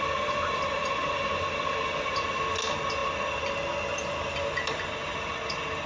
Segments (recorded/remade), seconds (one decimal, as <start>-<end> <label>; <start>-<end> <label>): 0.0-5.9 recorded